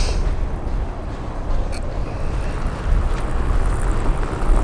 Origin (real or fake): real